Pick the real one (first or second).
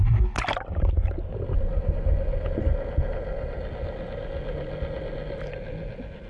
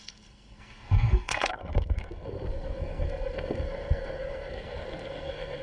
first